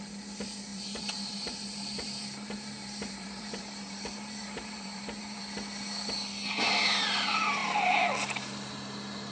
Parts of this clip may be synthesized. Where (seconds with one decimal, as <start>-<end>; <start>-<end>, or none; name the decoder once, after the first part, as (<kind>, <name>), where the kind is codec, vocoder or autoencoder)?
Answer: 0.7-5.4 (vocoder, BigVGAN v2); 7.6-8.1